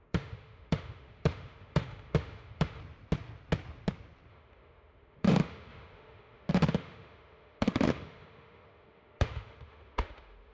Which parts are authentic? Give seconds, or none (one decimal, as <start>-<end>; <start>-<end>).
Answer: 2.8-4.3